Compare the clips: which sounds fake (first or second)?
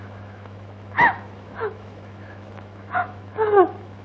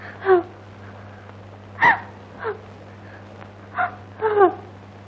first